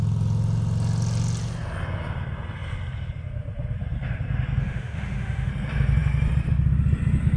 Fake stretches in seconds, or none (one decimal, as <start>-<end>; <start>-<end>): 4.6-5.5